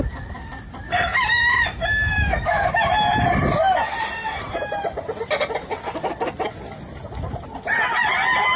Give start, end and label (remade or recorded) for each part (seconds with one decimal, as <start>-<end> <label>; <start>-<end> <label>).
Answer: 0.0-1.4 recorded; 1.4-2.9 remade; 2.9-8.6 recorded